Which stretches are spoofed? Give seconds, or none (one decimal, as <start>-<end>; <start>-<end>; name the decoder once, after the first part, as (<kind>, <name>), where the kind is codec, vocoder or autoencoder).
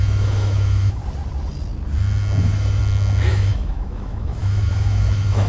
0.0-1.0 (autoencoder, DAC-VAE); 2.4-2.8; 3.3-5.5